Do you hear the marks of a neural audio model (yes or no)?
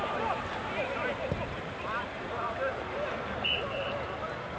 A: no